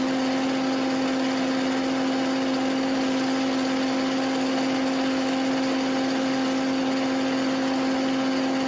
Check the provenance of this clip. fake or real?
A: real